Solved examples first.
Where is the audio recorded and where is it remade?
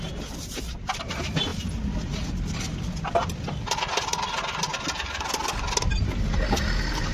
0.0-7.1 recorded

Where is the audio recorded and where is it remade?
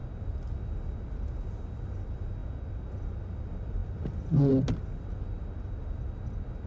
0.0-6.7 recorded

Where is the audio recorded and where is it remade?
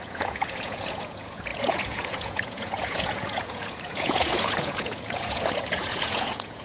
0.0-6.6 remade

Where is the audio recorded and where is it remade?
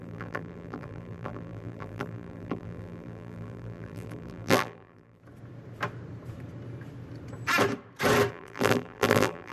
0.0-5.2 remade; 5.2-8.3 recorded; 8.3-9.5 remade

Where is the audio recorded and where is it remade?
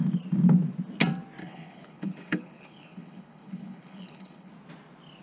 0.0-1.4 recorded; 1.4-4.5 remade; 4.5-5.2 recorded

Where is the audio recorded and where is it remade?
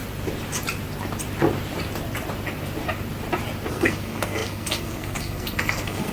0.0-3.7 recorded; 3.7-6.1 remade